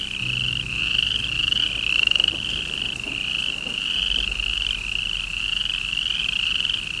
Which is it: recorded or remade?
recorded